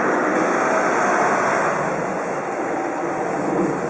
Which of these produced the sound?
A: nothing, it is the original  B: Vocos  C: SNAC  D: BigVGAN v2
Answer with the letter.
A